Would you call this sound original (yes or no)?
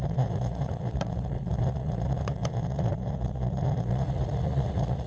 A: no